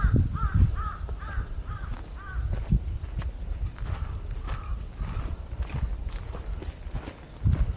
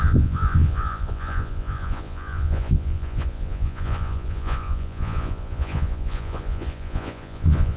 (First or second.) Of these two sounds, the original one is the first